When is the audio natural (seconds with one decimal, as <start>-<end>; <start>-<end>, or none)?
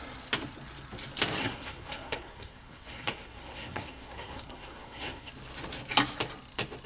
0.0-1.4; 5.3-6.9